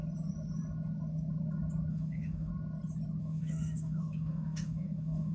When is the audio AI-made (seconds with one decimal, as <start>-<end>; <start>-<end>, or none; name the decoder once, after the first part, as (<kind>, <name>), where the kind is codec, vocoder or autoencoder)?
1.9-2.5 (autoencoder, DAC-VAE); 3.2-5.3